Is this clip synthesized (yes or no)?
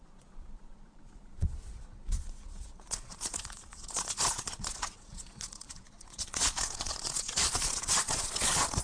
yes